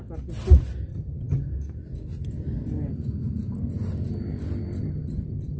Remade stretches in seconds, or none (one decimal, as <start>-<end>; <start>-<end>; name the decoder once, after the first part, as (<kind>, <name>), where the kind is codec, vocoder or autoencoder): 0.9-1.5 (vocoder, HiFi-GAN); 4.8-5.6